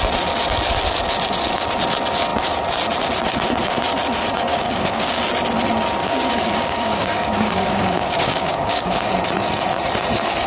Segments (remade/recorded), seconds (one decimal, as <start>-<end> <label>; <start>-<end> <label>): 0.0-4.5 recorded; 4.5-5.2 remade; 5.2-6.0 recorded; 6.0-9.1 remade; 9.1-10.5 recorded